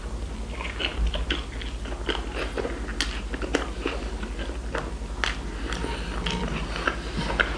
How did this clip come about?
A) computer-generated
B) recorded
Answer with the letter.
B